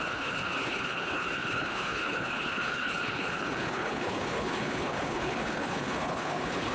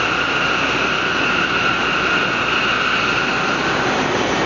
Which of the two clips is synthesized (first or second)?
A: first